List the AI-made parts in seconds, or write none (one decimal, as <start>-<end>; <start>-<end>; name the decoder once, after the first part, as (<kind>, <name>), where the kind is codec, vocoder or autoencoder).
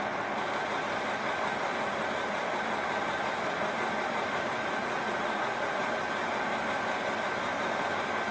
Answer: 4.8-5.9 (vocoder, Vocos)